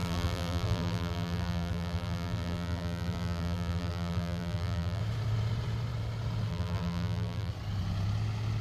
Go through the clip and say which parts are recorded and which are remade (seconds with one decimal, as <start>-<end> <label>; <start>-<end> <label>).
0.0-5.0 remade; 5.0-6.5 recorded; 6.5-7.5 remade; 7.5-8.6 recorded